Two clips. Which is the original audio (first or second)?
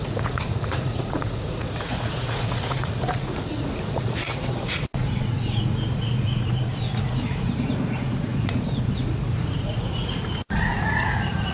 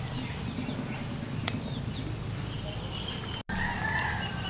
second